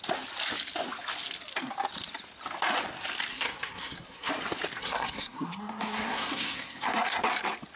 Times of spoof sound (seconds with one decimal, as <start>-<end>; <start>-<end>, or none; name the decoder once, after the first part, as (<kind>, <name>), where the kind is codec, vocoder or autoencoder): 3.3-4.3 (codec, SNAC); 4.8-7.2